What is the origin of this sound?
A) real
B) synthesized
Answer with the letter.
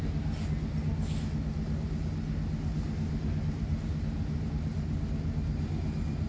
A